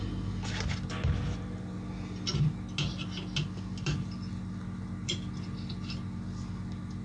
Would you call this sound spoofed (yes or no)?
no